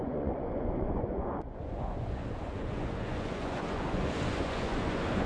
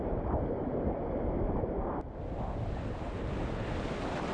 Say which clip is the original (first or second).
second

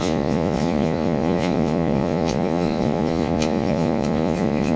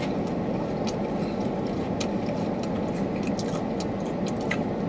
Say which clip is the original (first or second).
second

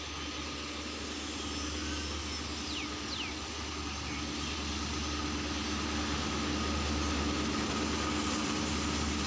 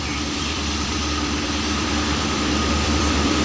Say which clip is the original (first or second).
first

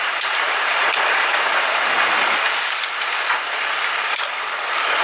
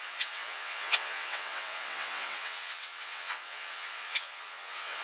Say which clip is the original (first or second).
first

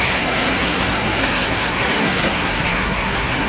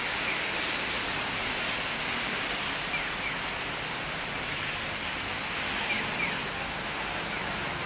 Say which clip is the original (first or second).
second